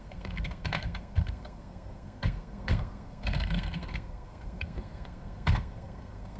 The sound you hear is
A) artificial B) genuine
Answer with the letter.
A